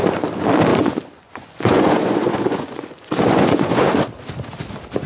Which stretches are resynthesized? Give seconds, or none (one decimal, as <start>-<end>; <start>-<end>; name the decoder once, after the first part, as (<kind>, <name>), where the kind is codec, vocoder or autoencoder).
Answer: 0.7-3.8 (vocoder, Vocos)